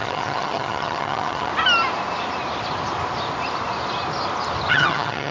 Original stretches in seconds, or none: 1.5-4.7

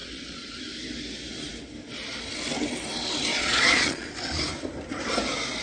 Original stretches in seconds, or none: 0.6-3.3; 4.1-5.6

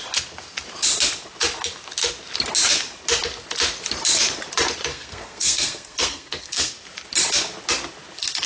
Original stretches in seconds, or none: 0.0-4.9; 6.7-8.5

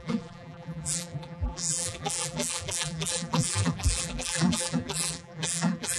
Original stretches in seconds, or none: none

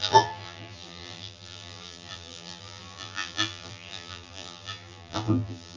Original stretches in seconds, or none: none

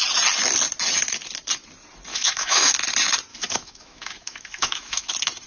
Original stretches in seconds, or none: 0.0-2.1; 2.7-3.3; 5.1-5.5

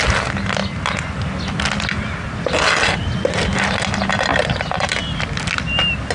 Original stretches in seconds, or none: 0.0-0.6; 1.1-4.3; 5.5-6.1

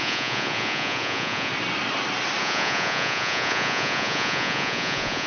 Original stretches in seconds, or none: 1.5-2.4